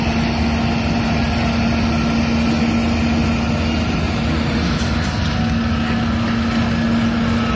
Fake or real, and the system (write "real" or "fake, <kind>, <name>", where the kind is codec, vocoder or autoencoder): real